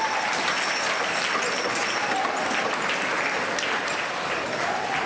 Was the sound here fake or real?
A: real